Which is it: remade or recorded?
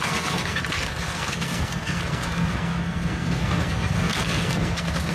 remade